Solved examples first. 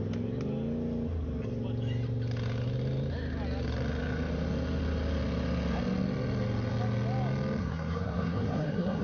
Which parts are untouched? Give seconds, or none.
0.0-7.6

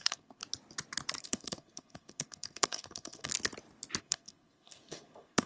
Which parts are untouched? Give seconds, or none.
0.4-1.2; 3.3-4.0